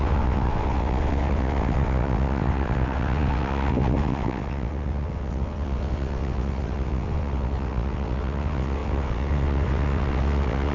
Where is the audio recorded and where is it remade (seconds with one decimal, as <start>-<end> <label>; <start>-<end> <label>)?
0.0-10.7 remade